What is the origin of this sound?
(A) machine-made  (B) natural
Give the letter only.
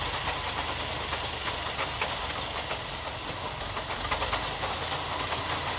B